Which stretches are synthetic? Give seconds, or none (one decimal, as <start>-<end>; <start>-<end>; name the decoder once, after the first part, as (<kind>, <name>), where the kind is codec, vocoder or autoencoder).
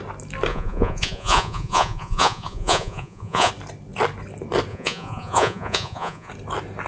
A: 0.5-3.5 (vocoder, Vocos); 4.7-6.3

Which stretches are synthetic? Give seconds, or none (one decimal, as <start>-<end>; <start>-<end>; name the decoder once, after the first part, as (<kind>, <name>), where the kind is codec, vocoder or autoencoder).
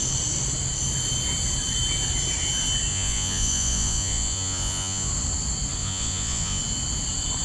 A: 2.9-5.1 (vocoder, Vocos); 5.8-6.6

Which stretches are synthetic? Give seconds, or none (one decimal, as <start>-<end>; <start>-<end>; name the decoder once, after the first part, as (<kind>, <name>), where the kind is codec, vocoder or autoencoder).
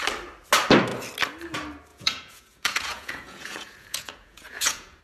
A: 1.9-5.0 (vocoder, Vocos)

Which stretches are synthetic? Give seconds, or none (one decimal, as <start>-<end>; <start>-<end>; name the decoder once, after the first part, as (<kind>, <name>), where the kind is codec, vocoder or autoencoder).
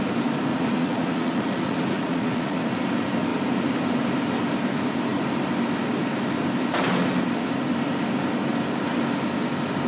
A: 0.5-2.7 (vocoder, Vocos)